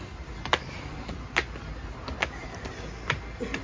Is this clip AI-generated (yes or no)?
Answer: no